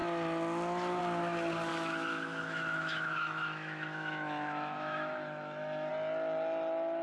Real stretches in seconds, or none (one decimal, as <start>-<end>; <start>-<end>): 0.0-1.7; 5.9-7.0